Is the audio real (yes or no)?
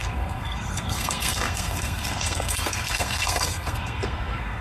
no